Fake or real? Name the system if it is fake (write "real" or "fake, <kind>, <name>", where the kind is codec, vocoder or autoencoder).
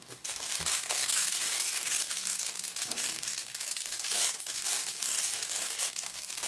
fake, codec, DAC